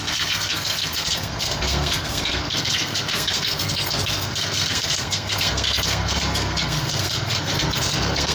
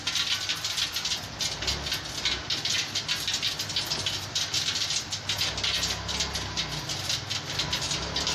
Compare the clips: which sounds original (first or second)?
second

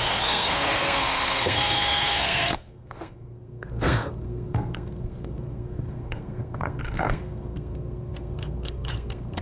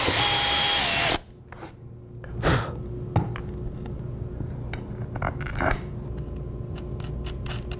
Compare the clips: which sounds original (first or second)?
second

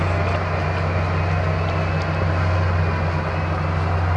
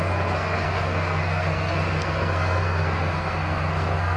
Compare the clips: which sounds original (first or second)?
first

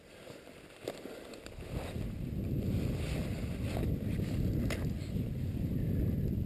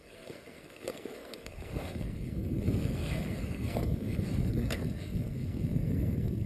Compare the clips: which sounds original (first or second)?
first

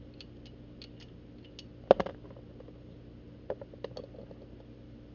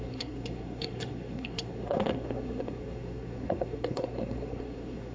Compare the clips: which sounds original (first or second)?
first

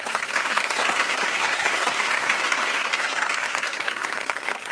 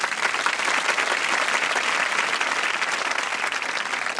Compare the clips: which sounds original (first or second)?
second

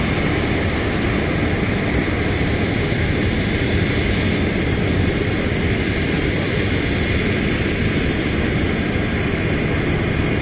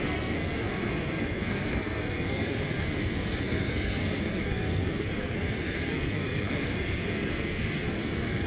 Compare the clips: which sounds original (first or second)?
first